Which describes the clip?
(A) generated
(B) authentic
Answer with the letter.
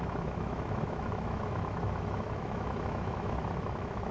A